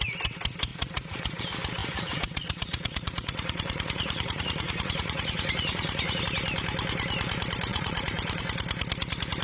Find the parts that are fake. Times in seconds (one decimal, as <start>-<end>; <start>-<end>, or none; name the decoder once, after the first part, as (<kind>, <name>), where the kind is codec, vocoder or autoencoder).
0.7-1.4 (vocoder, Vocos); 1.8-6.2; 7.7-8.4